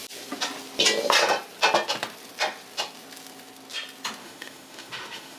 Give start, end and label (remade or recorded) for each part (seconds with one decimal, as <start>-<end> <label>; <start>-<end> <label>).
0.0-4.2 recorded; 4.2-5.4 remade

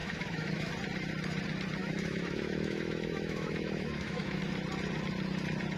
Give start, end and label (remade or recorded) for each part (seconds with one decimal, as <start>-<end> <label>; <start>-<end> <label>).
0.0-0.7 remade; 0.7-1.8 recorded; 1.8-4.4 remade; 4.4-5.8 recorded

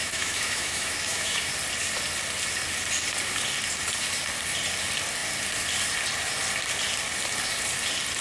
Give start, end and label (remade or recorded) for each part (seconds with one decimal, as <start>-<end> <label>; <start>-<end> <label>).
0.0-1.5 remade; 1.5-8.2 recorded